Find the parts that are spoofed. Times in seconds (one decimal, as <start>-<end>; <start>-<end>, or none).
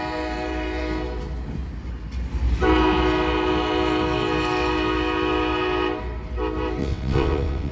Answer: 6.8-7.7